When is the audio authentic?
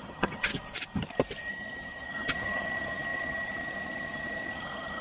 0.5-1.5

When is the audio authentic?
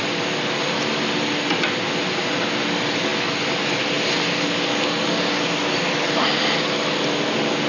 0.0-7.7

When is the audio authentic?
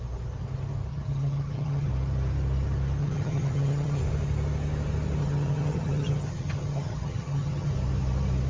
0.0-0.9; 1.9-3.0; 4.0-5.2; 7.7-8.5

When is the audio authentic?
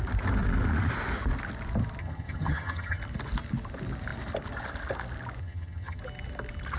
0.0-2.0; 3.0-5.4; 6.0-6.8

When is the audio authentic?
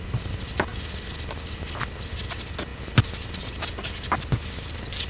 0.0-5.1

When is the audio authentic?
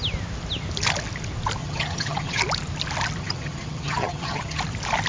0.0-1.6; 2.4-3.2; 4.6-5.1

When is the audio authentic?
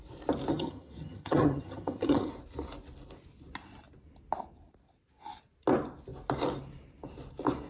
0.0-0.5; 2.3-7.7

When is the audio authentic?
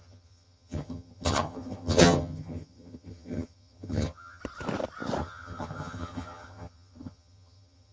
4.4-5.2